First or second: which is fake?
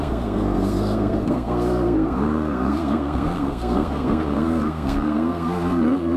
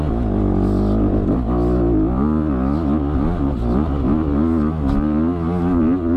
first